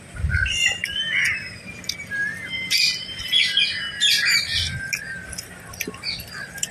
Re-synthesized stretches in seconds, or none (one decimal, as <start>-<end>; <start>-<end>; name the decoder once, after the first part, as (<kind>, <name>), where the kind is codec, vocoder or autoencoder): none